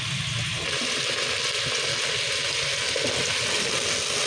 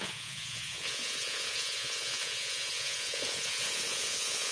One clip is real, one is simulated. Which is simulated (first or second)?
second